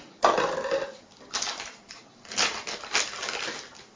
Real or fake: real